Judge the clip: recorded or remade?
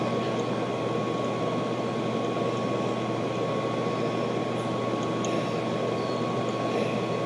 recorded